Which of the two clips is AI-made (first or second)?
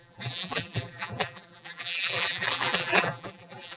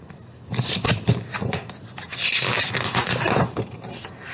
first